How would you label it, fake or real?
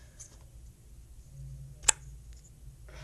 real